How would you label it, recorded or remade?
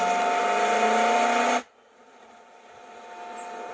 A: recorded